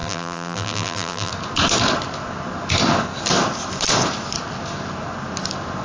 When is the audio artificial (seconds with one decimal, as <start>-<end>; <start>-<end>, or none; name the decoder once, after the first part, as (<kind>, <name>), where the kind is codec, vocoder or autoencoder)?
0.0-1.3 (vocoder, BigVGAN v2)